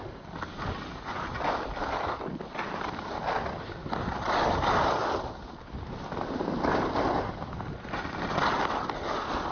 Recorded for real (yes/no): yes